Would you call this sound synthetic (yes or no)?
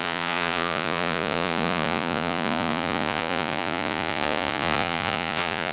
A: yes